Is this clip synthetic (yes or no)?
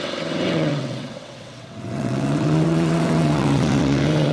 yes